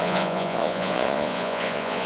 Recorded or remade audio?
remade